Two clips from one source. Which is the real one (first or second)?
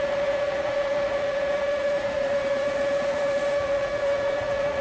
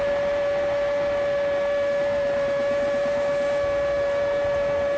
second